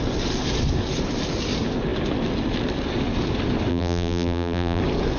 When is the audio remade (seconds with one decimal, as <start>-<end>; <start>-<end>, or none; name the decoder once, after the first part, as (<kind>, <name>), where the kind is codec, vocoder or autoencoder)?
3.7-4.8 (vocoder, BigVGAN v2)